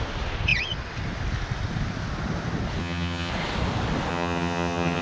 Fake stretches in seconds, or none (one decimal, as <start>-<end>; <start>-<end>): 2.8-3.3; 4.1-5.0